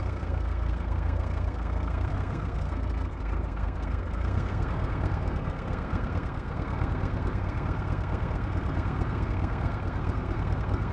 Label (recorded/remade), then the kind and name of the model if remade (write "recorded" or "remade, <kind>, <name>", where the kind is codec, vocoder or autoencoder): remade, codec, SNAC